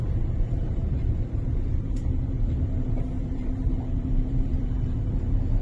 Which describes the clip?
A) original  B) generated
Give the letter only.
B